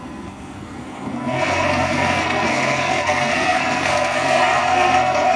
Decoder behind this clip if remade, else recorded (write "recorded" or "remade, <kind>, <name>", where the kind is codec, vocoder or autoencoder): remade, codec, SNAC